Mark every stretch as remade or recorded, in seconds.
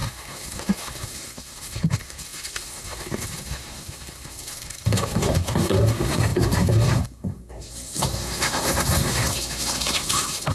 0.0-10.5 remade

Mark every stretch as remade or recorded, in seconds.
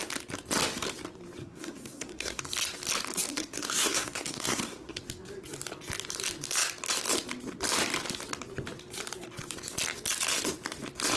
0.0-1.4 recorded; 1.4-2.4 remade; 2.4-3.3 recorded; 3.3-5.0 remade; 5.0-11.2 recorded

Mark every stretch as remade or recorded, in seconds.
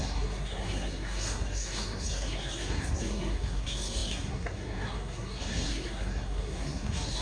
0.0-7.2 remade